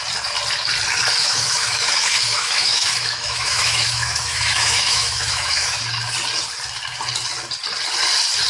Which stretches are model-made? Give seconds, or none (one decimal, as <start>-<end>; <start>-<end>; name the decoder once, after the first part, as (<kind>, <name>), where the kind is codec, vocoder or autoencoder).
1.2-5.8 (autoencoder, DAC-VAE)

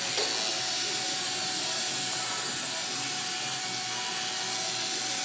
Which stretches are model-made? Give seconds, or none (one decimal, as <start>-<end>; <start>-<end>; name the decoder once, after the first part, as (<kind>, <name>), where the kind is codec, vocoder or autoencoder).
0.5-3.6 (vocoder, BigVGAN v2)

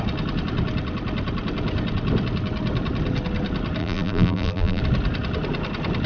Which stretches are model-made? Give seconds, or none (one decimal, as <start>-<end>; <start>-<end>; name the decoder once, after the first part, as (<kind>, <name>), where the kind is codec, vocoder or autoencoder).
3.8-4.8 (vocoder, BigVGAN v2)